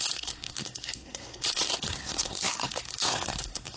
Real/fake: fake